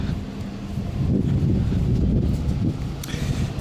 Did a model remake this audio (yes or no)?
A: no